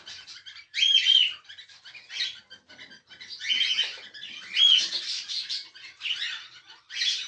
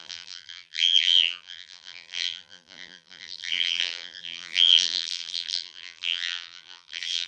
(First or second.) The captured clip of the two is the first